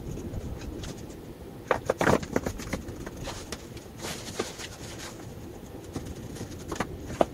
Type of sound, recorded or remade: remade